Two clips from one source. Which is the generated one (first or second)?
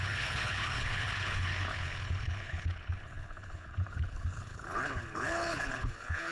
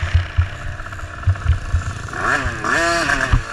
first